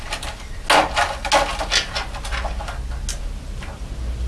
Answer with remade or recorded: recorded